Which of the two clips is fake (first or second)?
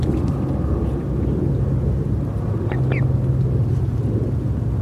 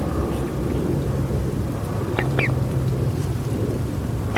second